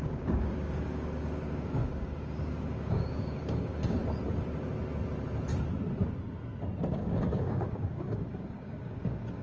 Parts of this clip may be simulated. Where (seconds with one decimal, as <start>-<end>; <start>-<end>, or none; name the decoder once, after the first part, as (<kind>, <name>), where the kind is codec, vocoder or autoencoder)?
0.0-4.0 (codec, DAC); 6.9-9.4